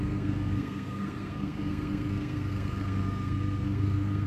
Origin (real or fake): fake